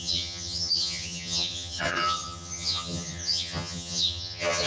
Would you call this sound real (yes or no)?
no